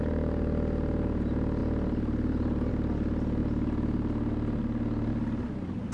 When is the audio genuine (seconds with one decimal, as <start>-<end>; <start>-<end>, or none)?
0.0-5.9